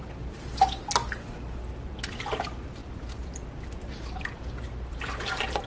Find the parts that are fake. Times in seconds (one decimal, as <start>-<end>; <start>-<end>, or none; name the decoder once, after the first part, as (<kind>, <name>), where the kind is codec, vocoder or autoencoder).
none